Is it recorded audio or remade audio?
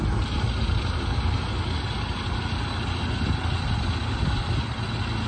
recorded